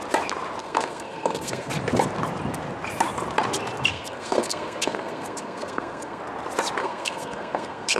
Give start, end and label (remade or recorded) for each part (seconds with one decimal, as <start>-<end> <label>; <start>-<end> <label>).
0.0-0.6 recorded; 0.6-1.7 remade; 1.7-3.9 recorded; 3.9-6.2 remade; 6.2-6.8 recorded; 6.8-8.0 remade